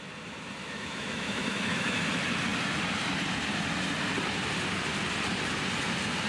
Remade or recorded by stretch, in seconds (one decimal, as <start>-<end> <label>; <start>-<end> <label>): 0.0-0.6 recorded; 0.6-2.0 remade; 2.0-6.3 recorded